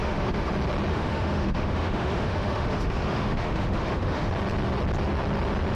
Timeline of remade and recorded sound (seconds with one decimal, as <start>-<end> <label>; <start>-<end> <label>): 0.0-0.5 remade; 0.5-0.9 recorded; 0.9-4.3 remade; 4.3-5.7 recorded